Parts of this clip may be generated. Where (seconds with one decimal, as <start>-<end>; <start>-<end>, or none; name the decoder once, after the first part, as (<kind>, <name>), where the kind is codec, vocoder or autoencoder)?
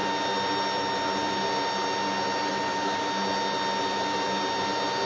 none